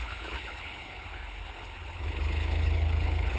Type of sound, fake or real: fake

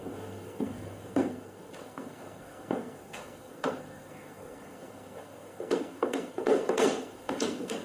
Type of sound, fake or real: fake